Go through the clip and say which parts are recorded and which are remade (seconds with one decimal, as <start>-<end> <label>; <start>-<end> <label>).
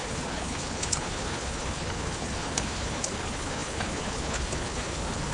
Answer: 0.0-5.3 remade